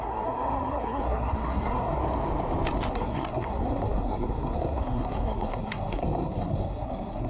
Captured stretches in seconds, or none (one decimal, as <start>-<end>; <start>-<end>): 2.0-2.9